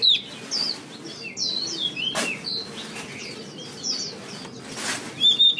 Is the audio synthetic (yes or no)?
no